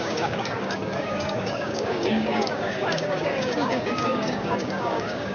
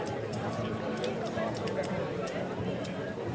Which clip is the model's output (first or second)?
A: first